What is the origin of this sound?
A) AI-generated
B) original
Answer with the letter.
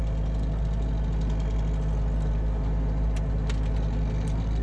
B